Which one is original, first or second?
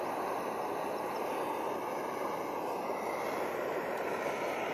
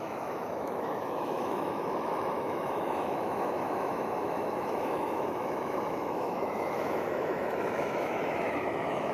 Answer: first